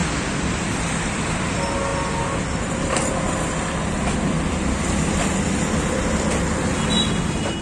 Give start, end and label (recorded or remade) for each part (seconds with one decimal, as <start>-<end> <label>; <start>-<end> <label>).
0.0-1.4 remade; 1.4-7.6 recorded